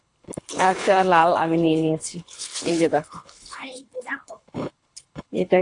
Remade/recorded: remade